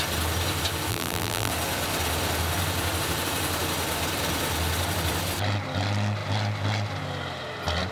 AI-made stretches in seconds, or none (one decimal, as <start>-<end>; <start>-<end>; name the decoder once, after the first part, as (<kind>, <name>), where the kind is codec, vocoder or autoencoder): 0.9-1.5 (vocoder, BigVGAN v2)

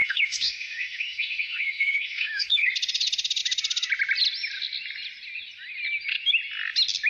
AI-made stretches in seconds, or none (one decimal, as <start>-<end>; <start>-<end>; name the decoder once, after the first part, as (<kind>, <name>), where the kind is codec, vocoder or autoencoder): 0.0-2.7 (autoencoder, DAC-VAE)

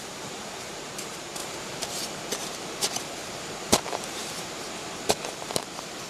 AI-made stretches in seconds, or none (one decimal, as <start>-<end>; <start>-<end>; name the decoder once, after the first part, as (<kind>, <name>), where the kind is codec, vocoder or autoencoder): 0.0-6.1 (vocoder, BigVGAN v2)